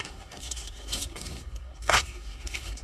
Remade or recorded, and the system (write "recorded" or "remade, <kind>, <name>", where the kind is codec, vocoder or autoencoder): remade, codec, SNAC